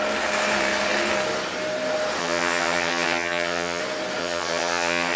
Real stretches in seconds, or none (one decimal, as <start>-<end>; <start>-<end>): 0.0-2.2; 3.8-4.2

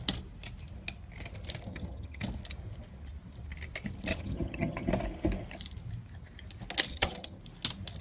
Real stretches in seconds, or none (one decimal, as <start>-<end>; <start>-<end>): 0.0-1.7; 2.2-4.1; 4.9-6.9; 7.4-8.0

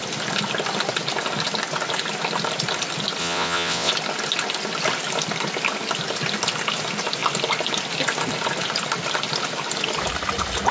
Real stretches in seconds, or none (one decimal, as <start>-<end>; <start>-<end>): 0.0-3.2; 3.9-10.7